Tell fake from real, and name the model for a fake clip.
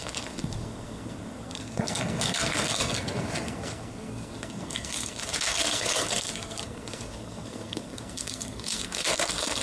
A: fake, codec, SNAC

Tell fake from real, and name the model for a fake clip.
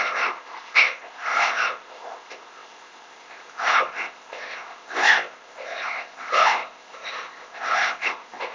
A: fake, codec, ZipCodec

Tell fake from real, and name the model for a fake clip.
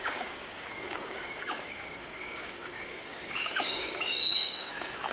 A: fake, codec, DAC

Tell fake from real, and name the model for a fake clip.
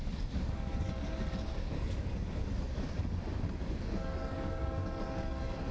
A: fake, codec, DAC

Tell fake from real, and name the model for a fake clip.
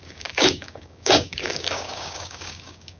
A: fake, codec, DAC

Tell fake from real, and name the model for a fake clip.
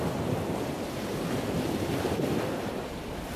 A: real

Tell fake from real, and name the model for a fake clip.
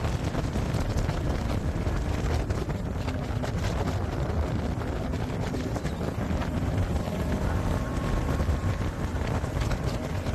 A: real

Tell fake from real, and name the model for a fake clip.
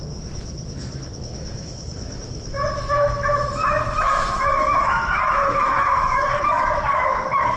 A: fake, autoencoder, DAC-VAE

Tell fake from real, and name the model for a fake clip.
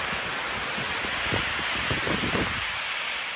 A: real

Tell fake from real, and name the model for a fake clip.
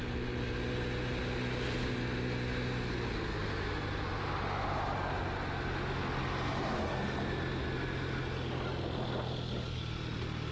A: real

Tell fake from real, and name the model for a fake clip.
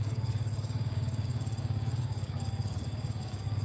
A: fake, codec, DAC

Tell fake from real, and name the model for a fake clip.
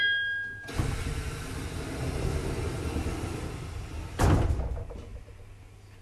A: real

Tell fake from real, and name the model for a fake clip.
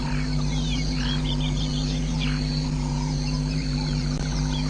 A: fake, vocoder, BigVGAN v2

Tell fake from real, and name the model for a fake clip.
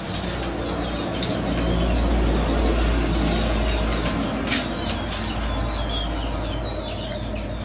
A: real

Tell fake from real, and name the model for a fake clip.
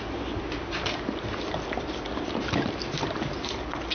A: real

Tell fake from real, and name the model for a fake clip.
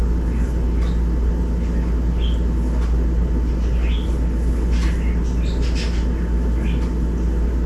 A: real